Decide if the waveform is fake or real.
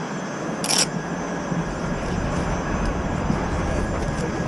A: real